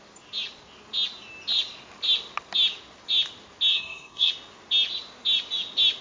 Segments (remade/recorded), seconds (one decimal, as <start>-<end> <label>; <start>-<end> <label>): 0.0-3.7 recorded; 3.7-4.3 remade; 4.3-6.0 recorded